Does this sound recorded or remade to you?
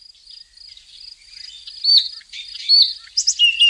recorded